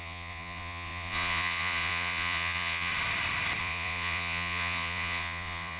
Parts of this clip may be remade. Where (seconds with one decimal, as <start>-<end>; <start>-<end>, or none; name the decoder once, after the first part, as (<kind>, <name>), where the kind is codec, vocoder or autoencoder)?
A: 0.0-2.9 (vocoder, Vocos); 3.6-5.8